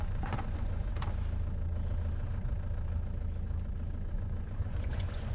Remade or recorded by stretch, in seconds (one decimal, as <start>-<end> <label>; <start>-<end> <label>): 0.0-0.9 remade; 0.9-4.1 recorded; 4.1-5.3 remade